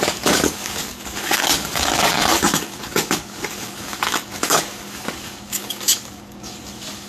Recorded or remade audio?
remade